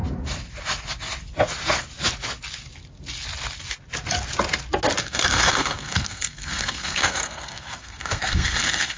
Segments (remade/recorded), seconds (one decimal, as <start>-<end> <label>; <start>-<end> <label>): 0.0-5.0 recorded; 5.0-9.0 remade